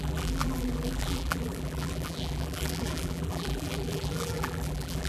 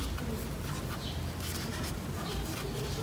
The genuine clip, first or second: second